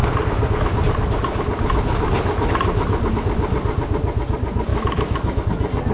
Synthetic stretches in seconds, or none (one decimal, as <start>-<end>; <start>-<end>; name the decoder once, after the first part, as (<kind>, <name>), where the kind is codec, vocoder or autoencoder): 4.7-5.4 (autoencoder, DAC-VAE)